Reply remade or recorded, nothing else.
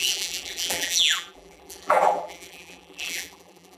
remade